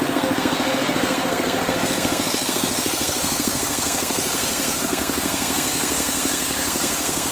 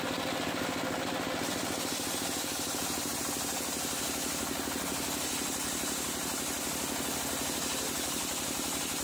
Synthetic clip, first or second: first